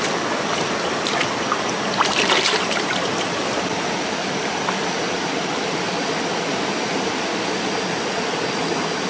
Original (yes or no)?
yes